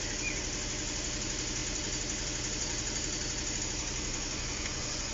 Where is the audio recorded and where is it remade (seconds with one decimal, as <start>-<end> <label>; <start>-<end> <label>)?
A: 0.0-4.1 recorded; 4.1-5.1 remade